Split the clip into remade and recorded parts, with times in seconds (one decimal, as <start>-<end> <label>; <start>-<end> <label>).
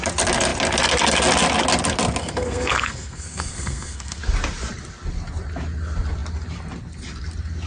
0.0-2.2 recorded; 2.2-4.2 remade; 4.2-7.7 recorded